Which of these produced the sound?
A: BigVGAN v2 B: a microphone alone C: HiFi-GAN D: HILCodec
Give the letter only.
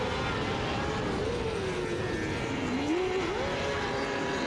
B